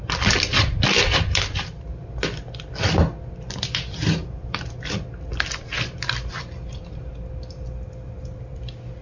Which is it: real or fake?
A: real